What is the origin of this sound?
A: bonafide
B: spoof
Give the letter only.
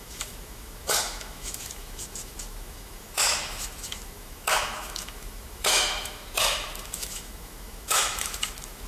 B